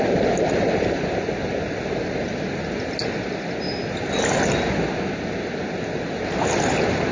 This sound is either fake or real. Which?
real